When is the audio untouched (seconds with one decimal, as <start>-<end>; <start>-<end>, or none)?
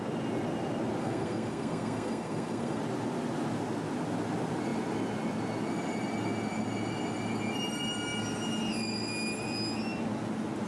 0.0-1.0; 2.8-10.7